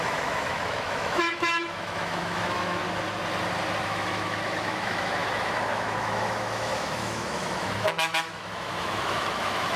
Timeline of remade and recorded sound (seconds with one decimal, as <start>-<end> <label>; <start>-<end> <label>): 0.0-2.8 remade; 2.8-3.8 recorded; 3.8-9.8 remade